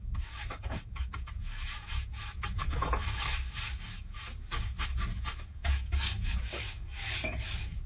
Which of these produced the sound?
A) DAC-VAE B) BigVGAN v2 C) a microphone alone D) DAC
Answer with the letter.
D